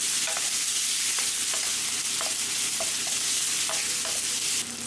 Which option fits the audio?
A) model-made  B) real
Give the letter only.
B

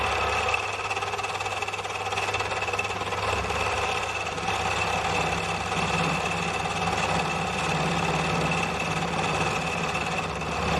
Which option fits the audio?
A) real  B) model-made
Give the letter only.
A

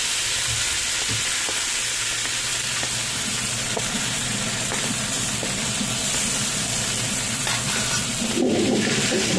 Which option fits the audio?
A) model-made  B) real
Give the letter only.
B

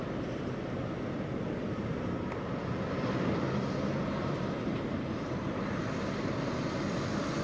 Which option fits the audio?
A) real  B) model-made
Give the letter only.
B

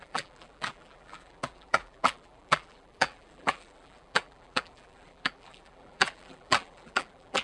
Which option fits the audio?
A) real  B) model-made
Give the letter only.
B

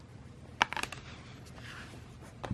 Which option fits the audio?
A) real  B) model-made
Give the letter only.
B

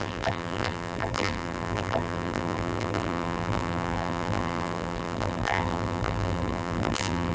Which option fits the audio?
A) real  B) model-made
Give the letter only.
B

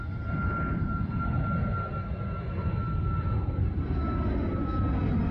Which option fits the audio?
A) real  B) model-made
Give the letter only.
A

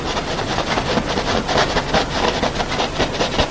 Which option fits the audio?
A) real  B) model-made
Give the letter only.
A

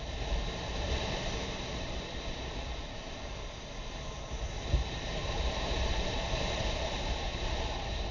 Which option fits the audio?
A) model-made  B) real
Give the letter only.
A